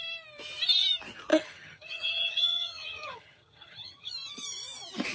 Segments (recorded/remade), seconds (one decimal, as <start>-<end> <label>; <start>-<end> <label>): 0.0-1.3 recorded; 1.3-4.1 remade; 4.1-5.1 recorded